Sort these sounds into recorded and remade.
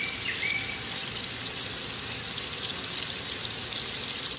remade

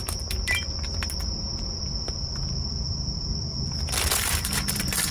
remade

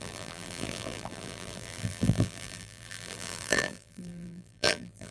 remade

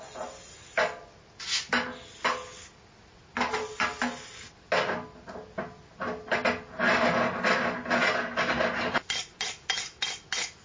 recorded